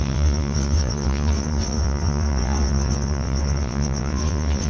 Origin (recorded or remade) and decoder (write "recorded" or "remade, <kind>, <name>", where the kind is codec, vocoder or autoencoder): remade, vocoder, WaveNeXt